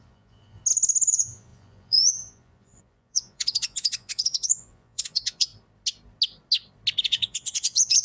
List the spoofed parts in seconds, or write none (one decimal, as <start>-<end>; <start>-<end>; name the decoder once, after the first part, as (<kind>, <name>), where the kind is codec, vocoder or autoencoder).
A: 0.0-0.6 (vocoder, Vocos); 1.1-5.5; 7.0-8.0